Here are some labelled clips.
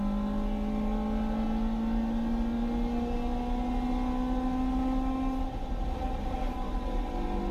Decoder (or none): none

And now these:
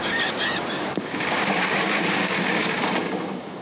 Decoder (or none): codec, DAC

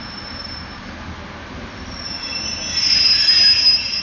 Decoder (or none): none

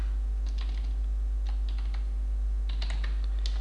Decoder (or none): none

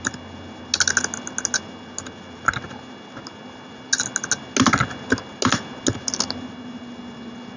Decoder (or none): none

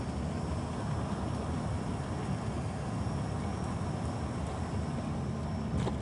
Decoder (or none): none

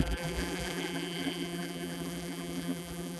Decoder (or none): vocoder, BigVGAN v2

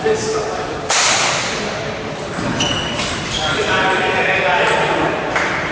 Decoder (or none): vocoder, BigVGAN v2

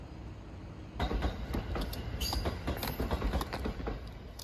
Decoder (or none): none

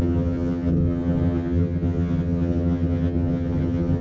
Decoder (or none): vocoder, HiFi-GAN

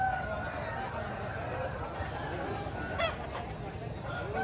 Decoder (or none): none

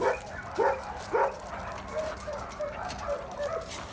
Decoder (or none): none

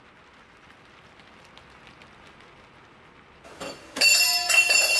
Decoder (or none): none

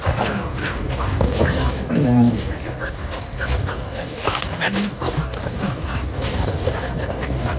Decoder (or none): codec, DAC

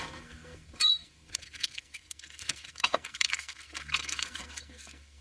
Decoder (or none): codec, SNAC